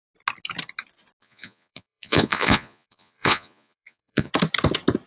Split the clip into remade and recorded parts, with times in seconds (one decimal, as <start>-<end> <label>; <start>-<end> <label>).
0.0-1.2 recorded; 1.2-4.3 remade; 4.3-5.1 recorded